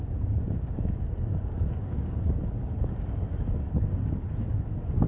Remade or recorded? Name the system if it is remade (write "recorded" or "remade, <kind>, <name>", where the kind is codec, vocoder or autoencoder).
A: remade, codec, DAC